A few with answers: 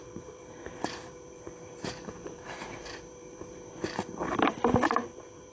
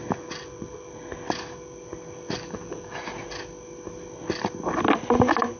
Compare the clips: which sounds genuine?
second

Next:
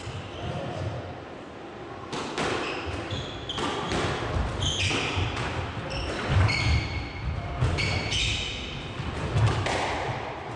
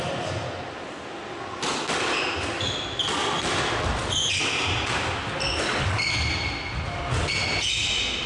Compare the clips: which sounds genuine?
second